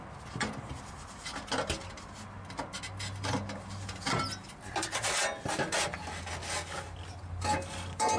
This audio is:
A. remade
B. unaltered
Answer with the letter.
B